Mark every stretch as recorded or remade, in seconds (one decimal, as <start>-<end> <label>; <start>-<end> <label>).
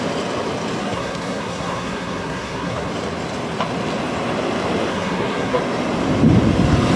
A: 0.0-0.8 recorded; 0.8-2.9 remade; 2.9-4.9 recorded; 4.9-5.6 remade; 5.6-7.0 recorded